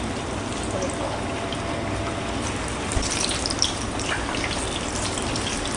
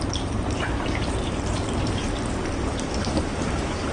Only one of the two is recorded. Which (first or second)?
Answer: first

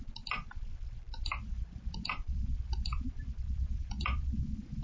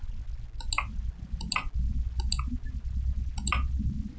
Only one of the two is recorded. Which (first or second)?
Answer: second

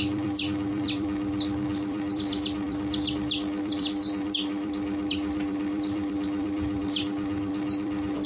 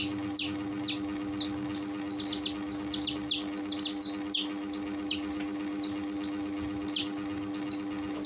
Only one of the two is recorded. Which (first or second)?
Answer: second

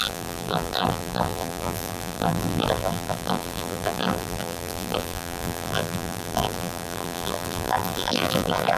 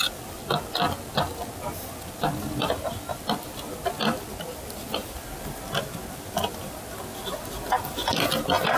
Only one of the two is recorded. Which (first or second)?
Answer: second